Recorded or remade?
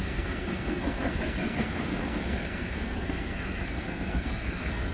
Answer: remade